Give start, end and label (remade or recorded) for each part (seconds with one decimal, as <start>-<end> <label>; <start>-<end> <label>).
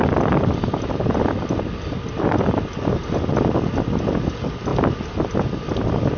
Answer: 0.0-6.2 recorded